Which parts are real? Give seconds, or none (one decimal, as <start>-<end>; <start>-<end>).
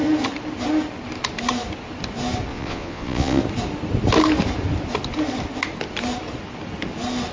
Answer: 0.0-2.5; 3.4-7.3